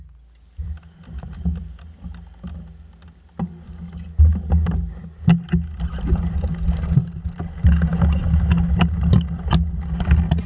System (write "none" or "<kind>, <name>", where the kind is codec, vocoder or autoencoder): none